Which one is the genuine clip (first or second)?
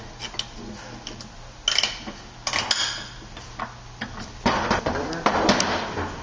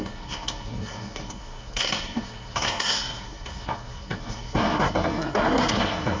first